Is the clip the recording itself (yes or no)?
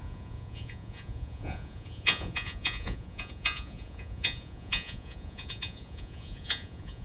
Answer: no